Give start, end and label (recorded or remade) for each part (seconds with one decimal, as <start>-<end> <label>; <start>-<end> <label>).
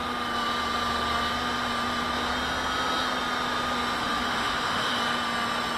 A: 0.0-4.0 recorded; 4.0-5.0 remade; 5.0-5.8 recorded